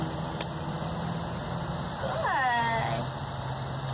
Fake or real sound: real